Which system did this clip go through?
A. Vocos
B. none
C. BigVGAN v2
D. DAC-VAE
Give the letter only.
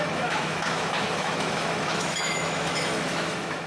D